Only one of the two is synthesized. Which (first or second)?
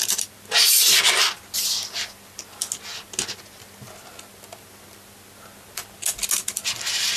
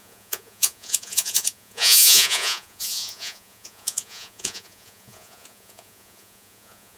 second